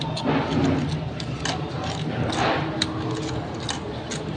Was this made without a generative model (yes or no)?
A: yes